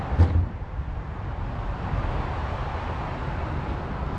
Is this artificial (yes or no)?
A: no